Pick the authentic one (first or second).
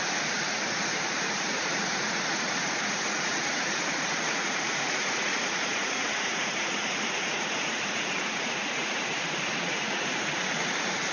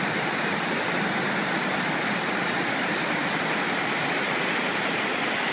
second